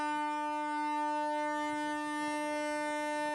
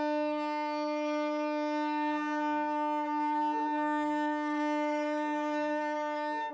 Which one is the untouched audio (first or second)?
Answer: first